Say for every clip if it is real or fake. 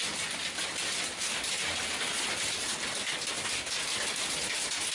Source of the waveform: real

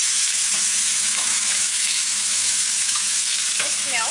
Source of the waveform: fake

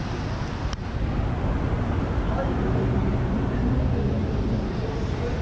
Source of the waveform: real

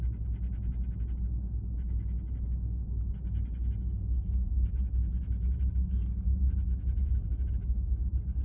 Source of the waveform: real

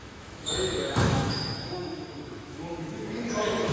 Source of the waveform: fake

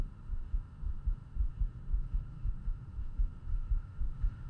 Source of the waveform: fake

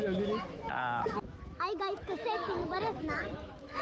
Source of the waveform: fake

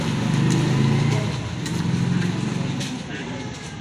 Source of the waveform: real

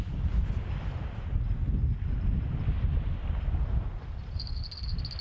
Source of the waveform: real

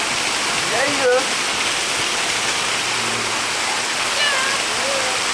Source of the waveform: real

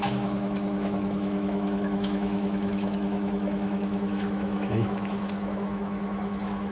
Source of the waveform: fake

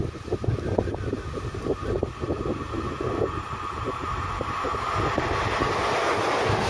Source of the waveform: real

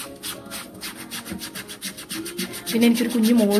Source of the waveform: real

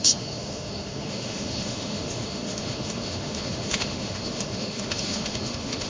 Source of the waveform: fake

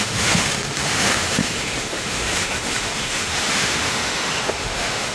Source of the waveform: fake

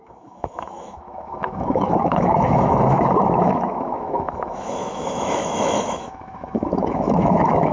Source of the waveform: fake